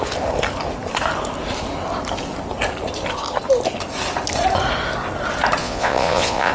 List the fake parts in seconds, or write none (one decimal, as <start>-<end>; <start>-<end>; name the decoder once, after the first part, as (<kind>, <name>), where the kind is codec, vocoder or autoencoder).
5.6-6.5 (vocoder, Vocos)